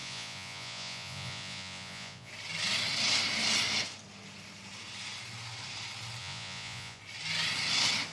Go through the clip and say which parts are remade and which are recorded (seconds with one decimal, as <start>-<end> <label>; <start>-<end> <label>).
0.0-2.3 remade; 2.3-6.2 recorded; 6.2-7.0 remade; 7.0-8.1 recorded